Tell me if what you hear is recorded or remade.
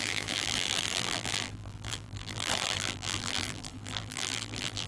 remade